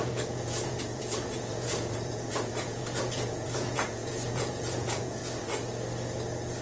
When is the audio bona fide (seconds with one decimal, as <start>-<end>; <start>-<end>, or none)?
5.2-6.6